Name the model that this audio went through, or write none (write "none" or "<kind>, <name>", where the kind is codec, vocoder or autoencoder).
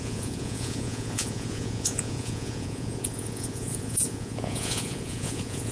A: vocoder, Vocos